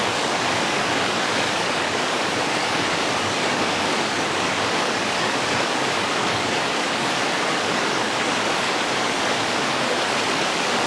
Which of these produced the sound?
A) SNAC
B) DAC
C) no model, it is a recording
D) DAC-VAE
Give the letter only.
B